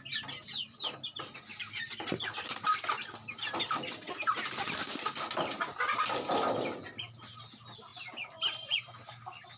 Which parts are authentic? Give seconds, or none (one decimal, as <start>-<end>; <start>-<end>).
0.0-9.6